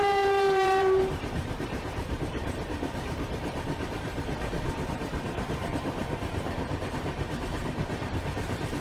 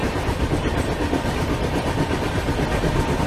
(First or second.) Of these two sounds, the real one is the second